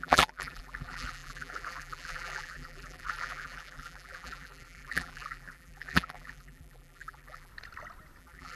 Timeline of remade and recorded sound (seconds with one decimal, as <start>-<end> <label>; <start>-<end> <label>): 0.0-7.5 remade; 7.5-8.2 recorded; 8.2-8.6 remade